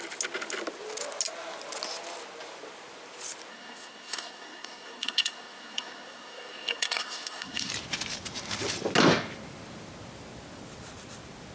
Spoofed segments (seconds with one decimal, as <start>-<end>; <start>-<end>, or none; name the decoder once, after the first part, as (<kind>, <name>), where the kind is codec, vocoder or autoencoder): 3.5-7.7 (codec, SNAC)